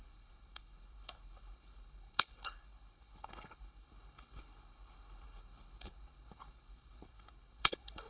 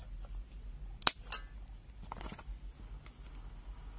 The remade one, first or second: first